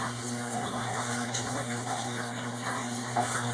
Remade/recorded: remade